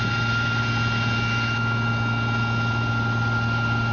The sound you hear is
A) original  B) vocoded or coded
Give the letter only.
A